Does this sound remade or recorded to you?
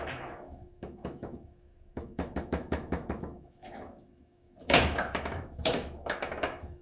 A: remade